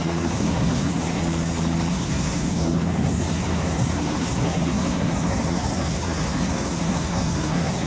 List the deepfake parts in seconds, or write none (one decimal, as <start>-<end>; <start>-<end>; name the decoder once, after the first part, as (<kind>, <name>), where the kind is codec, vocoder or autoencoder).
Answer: 0.0-1.2 (codec, SNAC); 1.9-7.9